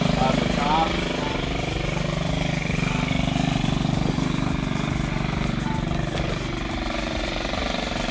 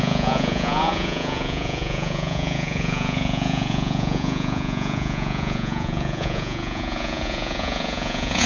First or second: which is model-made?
second